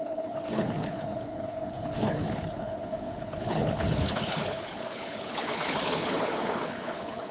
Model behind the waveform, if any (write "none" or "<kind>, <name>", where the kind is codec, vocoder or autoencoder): codec, HILCodec